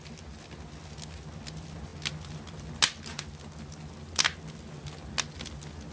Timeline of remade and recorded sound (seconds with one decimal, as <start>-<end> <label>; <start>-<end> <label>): 0.0-5.9 recorded

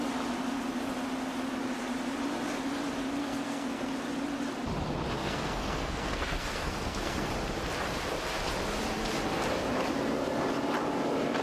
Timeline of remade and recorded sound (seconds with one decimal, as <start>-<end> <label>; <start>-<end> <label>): 0.0-3.2 recorded; 3.2-3.9 remade; 3.9-5.2 recorded; 5.2-7.3 remade; 7.3-11.4 recorded

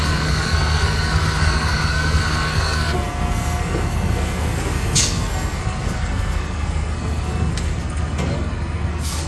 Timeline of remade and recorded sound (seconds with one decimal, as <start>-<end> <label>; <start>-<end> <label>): 0.0-9.3 remade

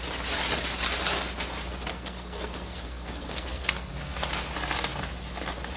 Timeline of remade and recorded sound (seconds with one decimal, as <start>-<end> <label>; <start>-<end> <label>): 0.0-1.9 recorded; 1.9-3.9 remade; 3.9-5.8 recorded

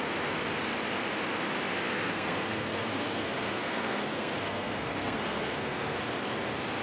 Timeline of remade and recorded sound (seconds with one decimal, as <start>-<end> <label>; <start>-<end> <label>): 0.0-1.9 recorded; 1.9-6.0 remade; 6.0-6.8 recorded